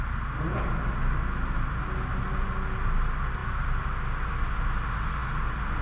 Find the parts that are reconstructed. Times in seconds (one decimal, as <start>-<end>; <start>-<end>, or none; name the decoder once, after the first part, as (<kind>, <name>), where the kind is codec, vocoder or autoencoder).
none